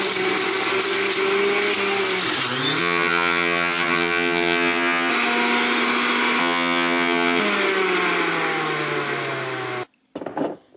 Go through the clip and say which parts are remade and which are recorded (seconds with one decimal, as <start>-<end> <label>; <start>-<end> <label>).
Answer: 0.0-2.8 recorded; 2.8-5.1 remade; 5.1-6.4 recorded; 6.4-7.4 remade; 7.4-10.8 recorded